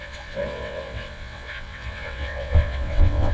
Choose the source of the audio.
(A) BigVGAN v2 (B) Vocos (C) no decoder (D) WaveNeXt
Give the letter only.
D